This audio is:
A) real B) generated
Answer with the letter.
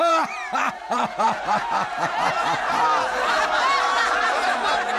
B